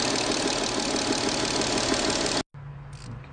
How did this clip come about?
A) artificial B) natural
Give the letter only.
B